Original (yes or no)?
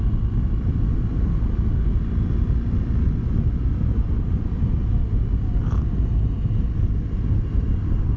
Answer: yes